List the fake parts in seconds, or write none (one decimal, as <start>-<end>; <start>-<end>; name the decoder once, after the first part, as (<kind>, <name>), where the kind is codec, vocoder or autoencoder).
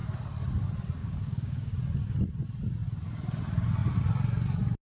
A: 1.0-1.7 (codec, DAC)